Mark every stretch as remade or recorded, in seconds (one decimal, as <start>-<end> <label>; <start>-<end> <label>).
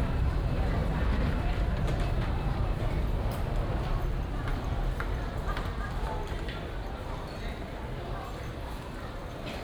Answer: 0.0-9.6 remade